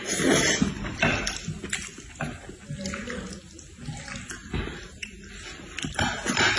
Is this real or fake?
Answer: real